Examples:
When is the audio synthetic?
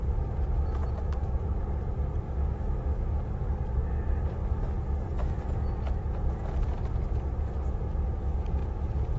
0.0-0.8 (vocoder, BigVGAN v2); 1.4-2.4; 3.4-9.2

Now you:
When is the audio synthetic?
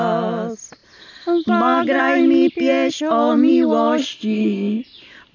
4.0-4.8 (codec, ZipCodec)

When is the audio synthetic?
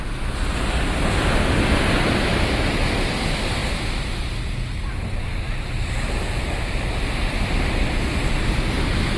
none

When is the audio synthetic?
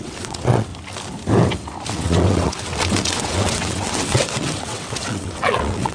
0.0-0.7 (vocoder, WaveNeXt); 1.9-5.9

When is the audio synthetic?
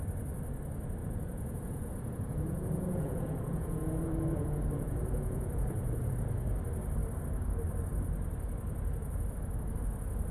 1.0-6.1 (vocoder, Vocos)